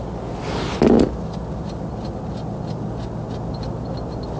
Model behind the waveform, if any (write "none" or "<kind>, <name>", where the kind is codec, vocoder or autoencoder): none